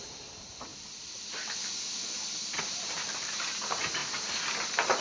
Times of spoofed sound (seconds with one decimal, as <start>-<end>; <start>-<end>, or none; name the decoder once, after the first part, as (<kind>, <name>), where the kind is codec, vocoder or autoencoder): 0.0-0.7 (vocoder, BigVGAN v2); 2.6-4.0